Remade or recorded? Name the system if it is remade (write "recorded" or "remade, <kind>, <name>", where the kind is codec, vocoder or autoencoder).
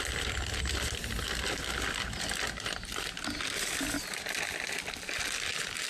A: recorded